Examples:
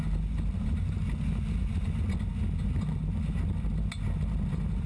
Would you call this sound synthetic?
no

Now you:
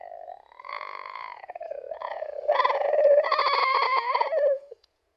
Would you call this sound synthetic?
yes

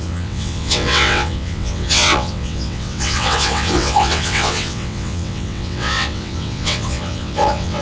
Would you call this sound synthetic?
yes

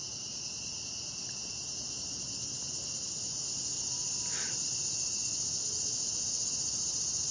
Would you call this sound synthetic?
no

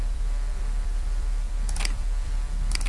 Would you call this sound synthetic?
yes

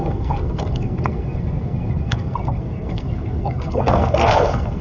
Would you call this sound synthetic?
yes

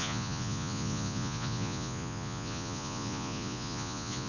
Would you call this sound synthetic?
yes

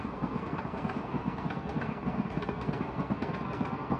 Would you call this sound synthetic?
yes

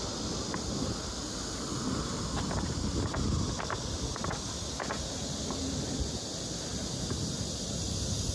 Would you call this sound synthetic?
no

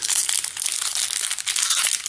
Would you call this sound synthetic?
no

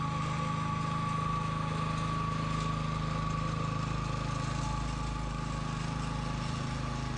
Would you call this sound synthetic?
no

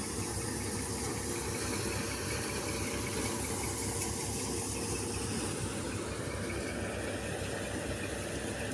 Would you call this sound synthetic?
no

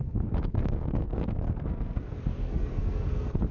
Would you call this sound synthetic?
yes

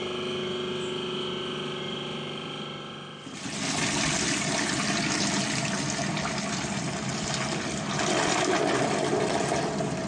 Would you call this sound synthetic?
no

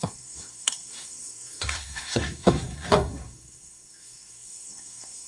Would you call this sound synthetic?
yes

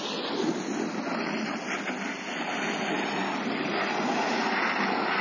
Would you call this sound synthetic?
no